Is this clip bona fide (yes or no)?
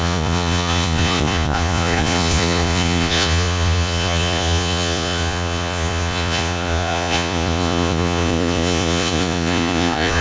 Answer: no